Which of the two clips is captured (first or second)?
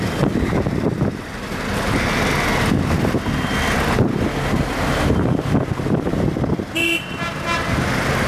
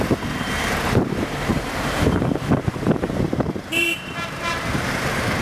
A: first